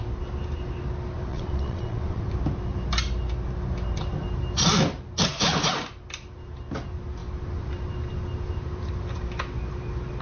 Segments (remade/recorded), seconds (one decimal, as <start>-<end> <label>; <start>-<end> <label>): 0.0-1.3 recorded; 1.3-2.2 remade; 2.2-10.2 recorded